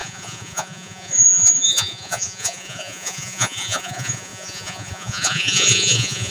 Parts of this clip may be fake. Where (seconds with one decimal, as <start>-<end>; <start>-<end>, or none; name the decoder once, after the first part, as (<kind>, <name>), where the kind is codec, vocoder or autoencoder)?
0.0-6.3 (vocoder, Vocos)